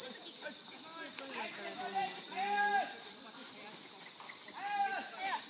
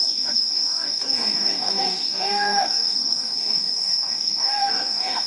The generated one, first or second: second